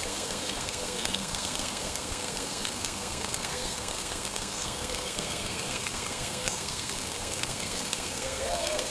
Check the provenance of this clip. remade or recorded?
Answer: remade